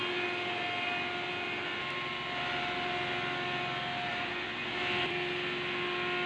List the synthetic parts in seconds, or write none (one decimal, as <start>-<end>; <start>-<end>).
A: none